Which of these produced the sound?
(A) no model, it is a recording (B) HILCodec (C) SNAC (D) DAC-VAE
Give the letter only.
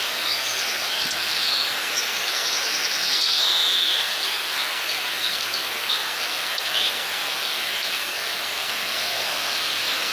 C